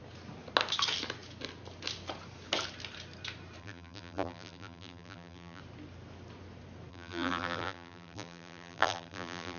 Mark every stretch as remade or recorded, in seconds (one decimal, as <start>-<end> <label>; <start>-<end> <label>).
0.0-3.6 recorded; 3.6-5.6 remade; 5.6-6.9 recorded; 6.9-9.6 remade